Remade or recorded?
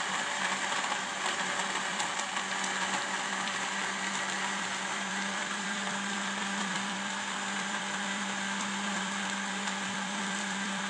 remade